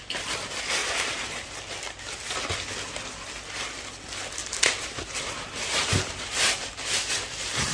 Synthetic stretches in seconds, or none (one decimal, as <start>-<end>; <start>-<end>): 0.8-1.5; 4.4-6.6